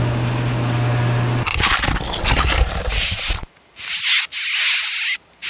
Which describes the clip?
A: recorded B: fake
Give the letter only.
A